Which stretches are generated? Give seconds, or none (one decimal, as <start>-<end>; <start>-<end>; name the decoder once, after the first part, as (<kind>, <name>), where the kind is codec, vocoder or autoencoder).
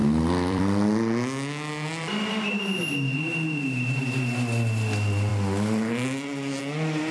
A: 0.0-0.6 (vocoder, BigVGAN v2)